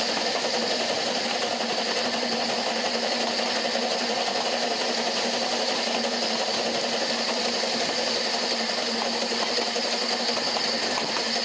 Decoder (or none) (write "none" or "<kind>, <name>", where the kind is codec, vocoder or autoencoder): none